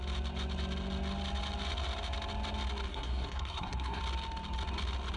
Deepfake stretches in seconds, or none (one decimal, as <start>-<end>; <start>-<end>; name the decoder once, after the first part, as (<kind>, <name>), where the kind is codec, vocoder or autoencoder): 2.9-4.0 (codec, SNAC)